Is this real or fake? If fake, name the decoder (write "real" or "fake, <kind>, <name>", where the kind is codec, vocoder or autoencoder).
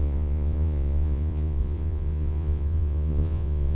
fake, vocoder, Vocos